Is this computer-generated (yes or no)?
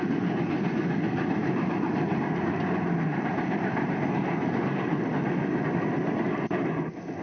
no